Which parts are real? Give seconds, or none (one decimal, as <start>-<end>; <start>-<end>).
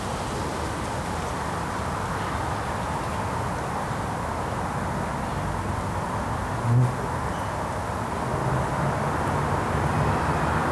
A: 0.0-10.7